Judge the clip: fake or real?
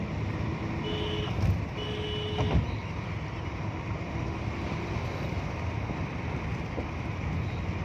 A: real